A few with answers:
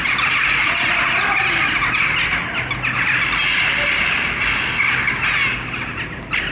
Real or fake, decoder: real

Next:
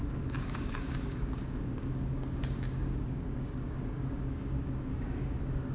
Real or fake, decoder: fake, codec, DAC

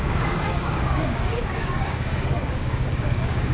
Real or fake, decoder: fake, codec, DAC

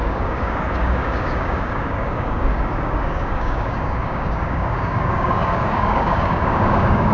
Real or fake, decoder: fake, codec, DAC